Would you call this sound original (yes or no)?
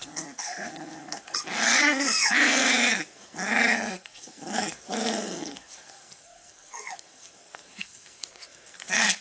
no